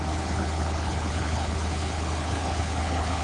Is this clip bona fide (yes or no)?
no